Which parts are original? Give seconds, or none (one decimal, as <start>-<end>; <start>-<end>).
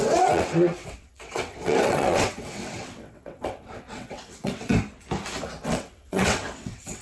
4.7-5.6